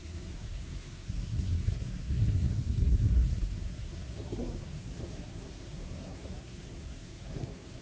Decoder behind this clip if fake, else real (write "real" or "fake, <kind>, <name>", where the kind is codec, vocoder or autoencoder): fake, codec, SNAC